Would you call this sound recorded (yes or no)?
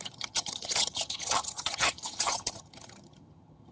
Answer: no